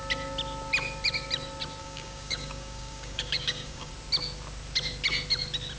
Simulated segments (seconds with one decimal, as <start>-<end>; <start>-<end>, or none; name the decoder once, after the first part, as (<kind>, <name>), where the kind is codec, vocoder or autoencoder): 1.8-3.9 (codec, DAC)